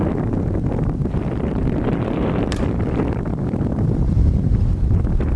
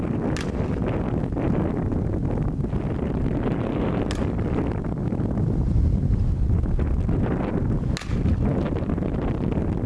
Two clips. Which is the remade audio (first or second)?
first